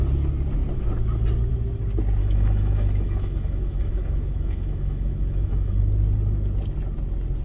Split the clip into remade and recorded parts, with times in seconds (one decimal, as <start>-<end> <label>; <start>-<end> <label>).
0.0-2.2 recorded; 2.2-5.8 remade; 5.8-7.4 recorded